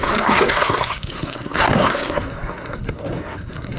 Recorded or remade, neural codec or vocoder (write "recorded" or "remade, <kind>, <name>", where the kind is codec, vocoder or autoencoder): remade, codec, SNAC